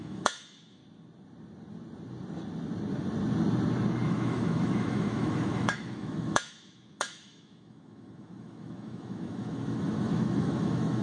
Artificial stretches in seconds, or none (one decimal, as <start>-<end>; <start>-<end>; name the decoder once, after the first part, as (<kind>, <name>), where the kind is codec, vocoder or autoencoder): 0.0-0.8 (autoencoder, DAC-VAE); 4.1-11.0